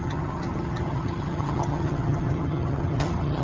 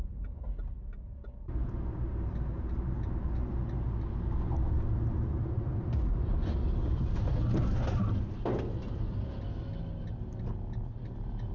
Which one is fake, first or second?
first